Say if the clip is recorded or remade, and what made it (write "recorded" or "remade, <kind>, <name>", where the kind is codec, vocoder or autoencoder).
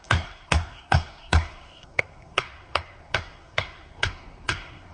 remade, codec, SNAC